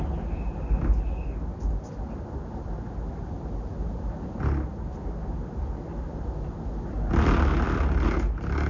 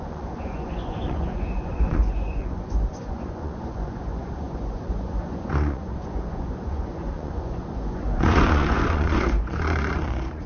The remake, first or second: second